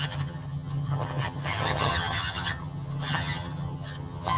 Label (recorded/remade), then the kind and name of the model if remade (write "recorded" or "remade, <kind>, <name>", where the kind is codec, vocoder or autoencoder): remade, vocoder, HiFi-GAN